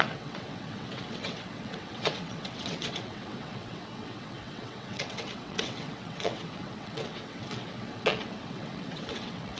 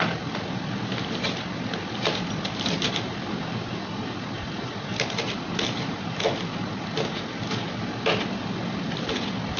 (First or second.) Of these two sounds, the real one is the second